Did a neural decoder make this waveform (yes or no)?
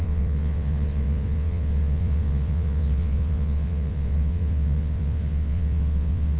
yes